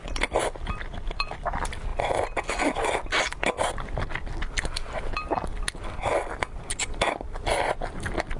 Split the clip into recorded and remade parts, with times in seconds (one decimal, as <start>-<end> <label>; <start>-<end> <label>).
0.0-8.4 recorded